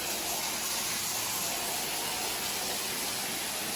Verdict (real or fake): real